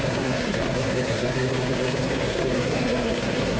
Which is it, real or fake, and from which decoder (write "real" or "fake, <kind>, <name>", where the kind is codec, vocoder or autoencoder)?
fake, codec, SNAC